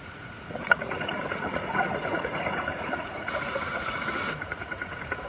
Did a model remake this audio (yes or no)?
yes